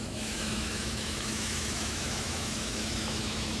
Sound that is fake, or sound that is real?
fake